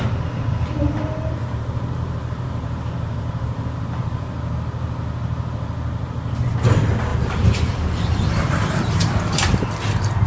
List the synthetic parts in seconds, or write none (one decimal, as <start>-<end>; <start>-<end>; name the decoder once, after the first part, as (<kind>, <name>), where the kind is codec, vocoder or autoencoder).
1.4-4.3 (vocoder, BigVGAN v2); 7.1-10.3